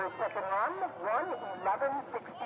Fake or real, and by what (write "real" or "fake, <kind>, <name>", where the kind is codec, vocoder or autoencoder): real